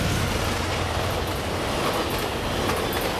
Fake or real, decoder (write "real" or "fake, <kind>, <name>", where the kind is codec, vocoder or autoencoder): real